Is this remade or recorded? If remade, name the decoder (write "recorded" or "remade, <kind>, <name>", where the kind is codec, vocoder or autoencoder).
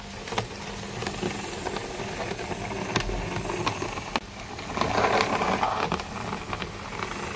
recorded